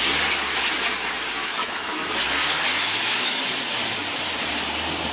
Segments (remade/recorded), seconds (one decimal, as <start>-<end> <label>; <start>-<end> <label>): 0.0-1.4 recorded; 1.4-2.0 remade; 2.0-2.7 recorded; 2.7-3.4 remade; 3.4-5.1 recorded